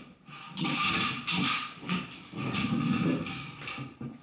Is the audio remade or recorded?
recorded